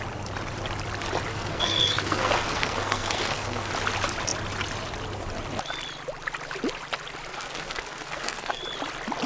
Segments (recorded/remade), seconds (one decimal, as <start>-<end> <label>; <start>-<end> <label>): 0.0-1.3 recorded; 1.3-3.7 remade; 3.7-7.3 recorded; 7.3-8.6 remade; 8.6-9.3 recorded